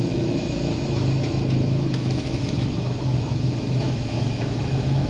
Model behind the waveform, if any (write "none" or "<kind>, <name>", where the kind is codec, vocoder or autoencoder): autoencoder, DAC-VAE